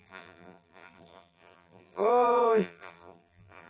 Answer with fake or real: fake